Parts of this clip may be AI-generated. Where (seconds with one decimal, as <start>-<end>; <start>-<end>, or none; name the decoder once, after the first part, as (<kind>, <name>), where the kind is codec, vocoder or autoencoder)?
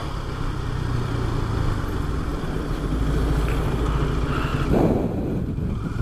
0.0-1.1 (vocoder, BigVGAN v2); 2.3-3.0